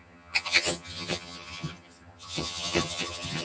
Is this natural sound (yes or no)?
no